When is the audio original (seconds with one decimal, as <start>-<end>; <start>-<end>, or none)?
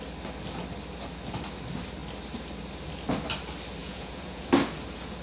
0.0-3.8; 4.5-5.2